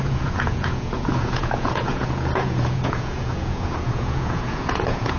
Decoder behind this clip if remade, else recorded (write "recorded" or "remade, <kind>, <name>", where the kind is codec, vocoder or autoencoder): remade, vocoder, Vocos